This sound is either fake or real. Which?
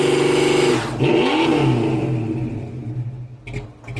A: real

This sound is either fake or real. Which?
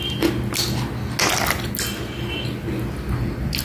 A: real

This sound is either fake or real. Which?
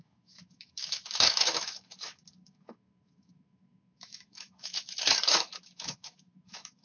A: fake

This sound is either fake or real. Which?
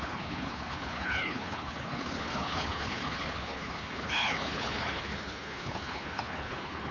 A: fake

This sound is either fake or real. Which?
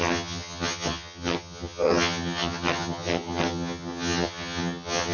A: fake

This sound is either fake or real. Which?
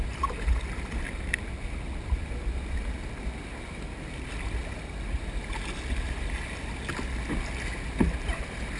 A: real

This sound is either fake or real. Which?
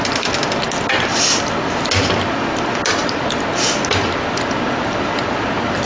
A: real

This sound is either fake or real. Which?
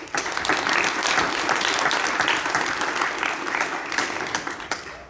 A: real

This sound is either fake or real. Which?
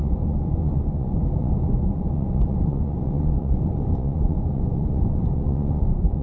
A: fake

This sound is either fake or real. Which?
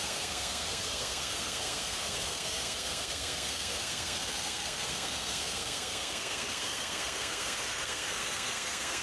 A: fake